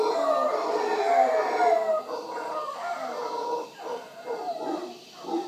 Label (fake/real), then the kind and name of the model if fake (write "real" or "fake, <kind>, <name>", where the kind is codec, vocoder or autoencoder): real